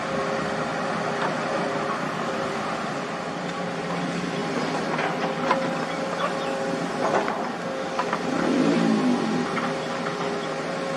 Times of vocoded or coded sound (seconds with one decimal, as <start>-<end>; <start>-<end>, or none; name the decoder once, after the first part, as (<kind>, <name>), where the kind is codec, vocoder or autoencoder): none